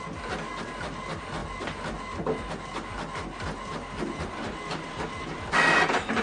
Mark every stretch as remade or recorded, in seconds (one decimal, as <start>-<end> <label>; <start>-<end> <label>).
0.0-6.2 recorded